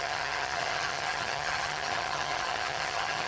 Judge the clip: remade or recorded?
remade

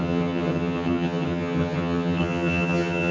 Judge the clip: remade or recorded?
remade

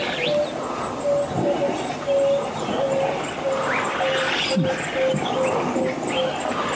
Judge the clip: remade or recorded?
recorded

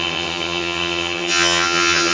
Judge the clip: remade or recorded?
remade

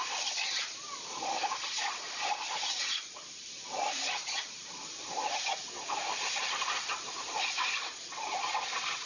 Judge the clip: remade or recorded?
recorded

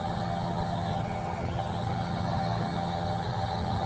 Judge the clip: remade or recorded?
remade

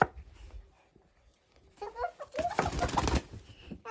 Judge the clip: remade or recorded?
recorded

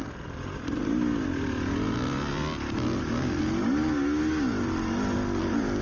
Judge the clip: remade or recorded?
recorded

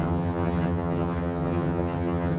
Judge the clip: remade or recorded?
remade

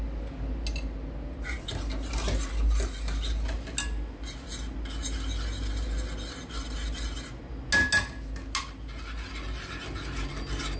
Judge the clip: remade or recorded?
recorded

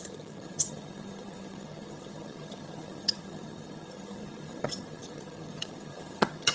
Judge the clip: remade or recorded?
remade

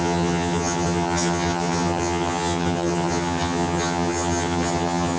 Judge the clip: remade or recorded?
remade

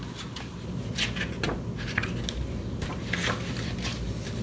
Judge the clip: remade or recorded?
recorded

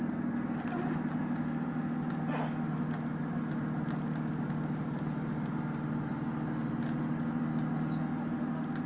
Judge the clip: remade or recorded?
recorded